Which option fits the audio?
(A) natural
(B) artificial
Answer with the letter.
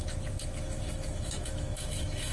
B